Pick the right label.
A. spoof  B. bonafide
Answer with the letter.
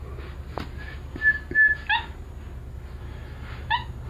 B